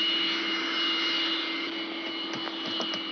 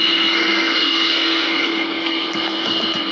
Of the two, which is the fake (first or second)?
second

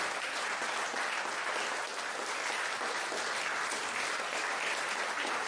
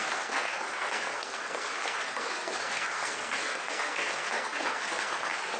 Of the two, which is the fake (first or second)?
second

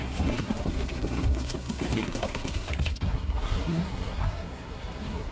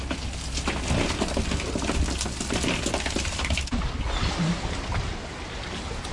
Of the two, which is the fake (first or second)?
first